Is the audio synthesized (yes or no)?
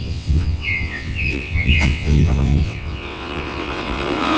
yes